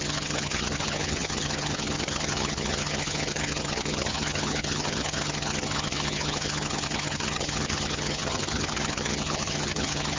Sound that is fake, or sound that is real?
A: fake